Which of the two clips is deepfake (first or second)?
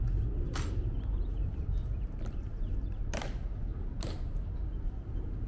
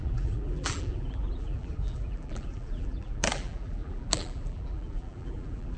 second